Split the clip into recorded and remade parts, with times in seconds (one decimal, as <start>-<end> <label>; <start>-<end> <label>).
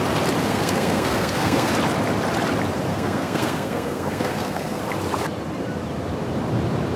0.0-0.4 recorded; 0.4-1.7 remade; 1.7-2.9 recorded; 2.9-4.8 remade; 4.8-7.0 recorded